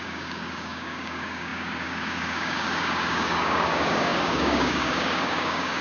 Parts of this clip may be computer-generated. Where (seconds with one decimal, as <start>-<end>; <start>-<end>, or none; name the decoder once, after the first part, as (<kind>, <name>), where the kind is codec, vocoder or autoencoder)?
0.0-5.8 (codec, DAC)